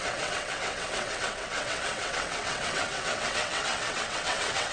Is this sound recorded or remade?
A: remade